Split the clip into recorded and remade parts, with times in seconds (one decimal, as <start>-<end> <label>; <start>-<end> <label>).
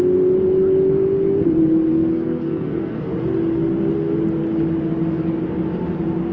0.0-1.9 recorded; 1.9-3.1 remade; 3.1-6.3 recorded